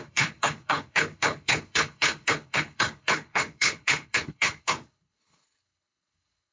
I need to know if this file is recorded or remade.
remade